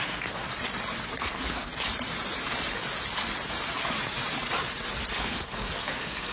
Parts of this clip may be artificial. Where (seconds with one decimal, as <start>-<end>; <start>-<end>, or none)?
0.0-0.5; 1.2-1.7; 5.1-6.3